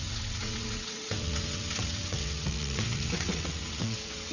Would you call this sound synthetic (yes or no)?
yes